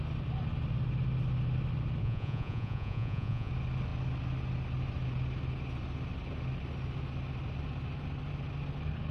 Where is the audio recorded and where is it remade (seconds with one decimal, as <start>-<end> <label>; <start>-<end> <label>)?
0.0-2.0 recorded; 2.0-3.5 remade; 3.5-9.1 recorded